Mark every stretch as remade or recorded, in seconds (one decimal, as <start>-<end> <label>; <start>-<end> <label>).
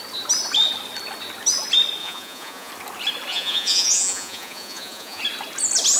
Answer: 0.0-2.0 recorded; 2.0-2.7 remade; 2.7-3.3 recorded; 3.3-5.2 remade; 5.2-6.0 recorded